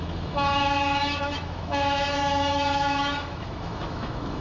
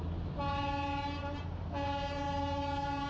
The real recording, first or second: second